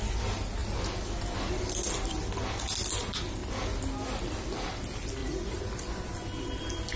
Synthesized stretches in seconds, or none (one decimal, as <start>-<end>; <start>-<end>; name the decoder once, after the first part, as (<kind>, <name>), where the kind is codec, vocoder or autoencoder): 5.2-5.7 (vocoder, Vocos)